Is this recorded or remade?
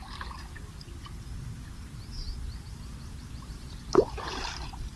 remade